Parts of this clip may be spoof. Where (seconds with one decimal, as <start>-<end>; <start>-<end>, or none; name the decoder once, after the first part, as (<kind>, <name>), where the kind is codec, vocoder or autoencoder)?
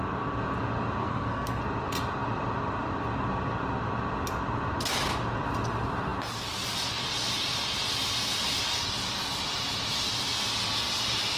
1.0-1.6 (codec, SNAC)